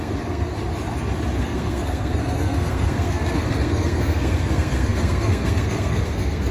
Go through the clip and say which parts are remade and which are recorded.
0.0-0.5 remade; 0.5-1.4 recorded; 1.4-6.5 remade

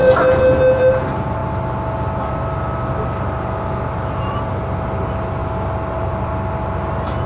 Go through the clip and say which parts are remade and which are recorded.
0.0-7.3 recorded

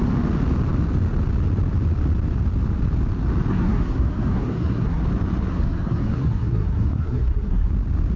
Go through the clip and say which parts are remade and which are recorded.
0.0-3.5 recorded; 3.5-5.0 remade; 5.0-5.5 recorded; 5.5-7.7 remade; 7.7-8.2 recorded

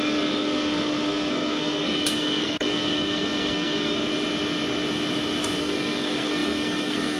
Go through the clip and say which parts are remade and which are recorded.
0.0-4.1 remade; 4.1-5.6 recorded; 5.6-7.2 remade

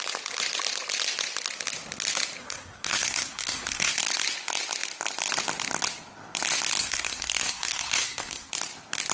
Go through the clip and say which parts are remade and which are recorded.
0.0-2.4 recorded; 2.4-3.9 remade; 3.9-6.8 recorded; 6.8-8.5 remade; 8.5-9.1 recorded